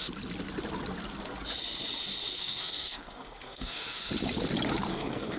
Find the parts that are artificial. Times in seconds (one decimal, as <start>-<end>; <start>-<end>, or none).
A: 2.3-4.1; 4.9-5.4

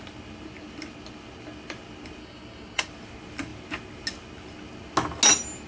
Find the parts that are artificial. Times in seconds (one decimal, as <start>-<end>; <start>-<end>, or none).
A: 2.2-2.9

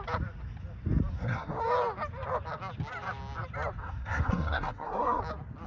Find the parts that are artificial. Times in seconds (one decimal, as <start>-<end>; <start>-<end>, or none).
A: 1.1-1.6; 3.8-5.2

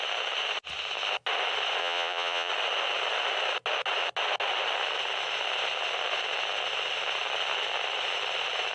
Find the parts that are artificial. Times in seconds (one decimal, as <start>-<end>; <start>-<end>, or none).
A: 1.8-2.5

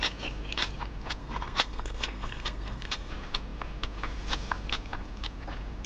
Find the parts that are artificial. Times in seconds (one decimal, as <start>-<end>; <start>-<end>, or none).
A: 1.2-3.1

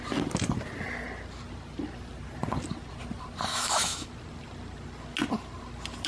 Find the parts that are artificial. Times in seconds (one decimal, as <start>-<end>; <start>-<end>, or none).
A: 3.5-4.1

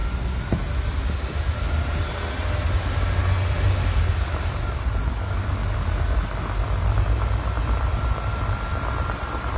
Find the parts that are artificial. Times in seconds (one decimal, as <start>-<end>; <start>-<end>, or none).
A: none